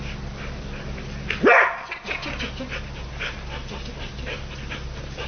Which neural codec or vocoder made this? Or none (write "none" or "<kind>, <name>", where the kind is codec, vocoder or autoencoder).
none